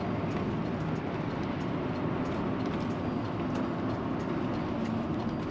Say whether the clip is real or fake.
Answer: real